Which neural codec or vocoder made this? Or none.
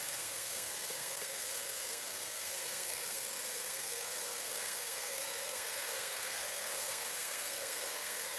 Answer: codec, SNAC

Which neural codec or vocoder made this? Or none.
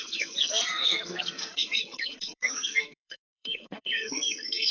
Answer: codec, SNAC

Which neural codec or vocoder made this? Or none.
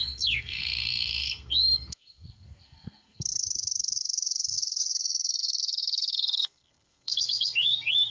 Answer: codec, SNAC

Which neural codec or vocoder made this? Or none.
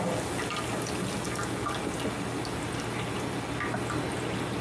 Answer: none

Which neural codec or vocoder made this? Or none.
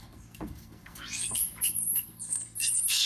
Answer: codec, SNAC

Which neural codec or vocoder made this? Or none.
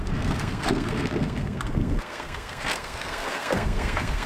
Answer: codec, SNAC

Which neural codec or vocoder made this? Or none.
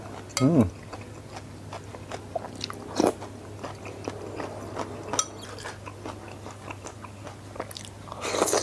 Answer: none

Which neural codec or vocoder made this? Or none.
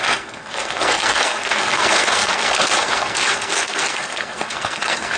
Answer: codec, SNAC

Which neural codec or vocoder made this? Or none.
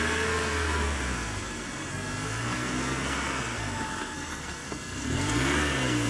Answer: codec, SNAC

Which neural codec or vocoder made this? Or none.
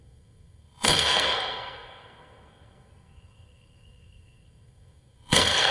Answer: codec, SNAC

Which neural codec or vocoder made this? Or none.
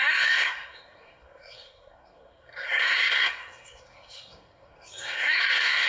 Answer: codec, SNAC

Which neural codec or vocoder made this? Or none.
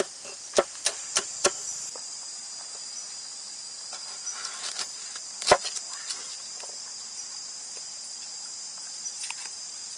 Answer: none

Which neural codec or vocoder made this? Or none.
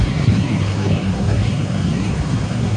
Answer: codec, SNAC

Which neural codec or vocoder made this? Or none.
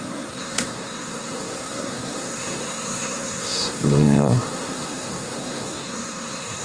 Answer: codec, SNAC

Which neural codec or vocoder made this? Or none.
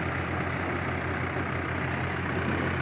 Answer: none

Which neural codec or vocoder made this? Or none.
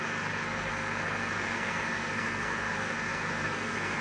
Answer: codec, SNAC